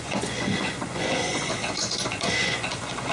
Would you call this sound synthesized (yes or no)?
yes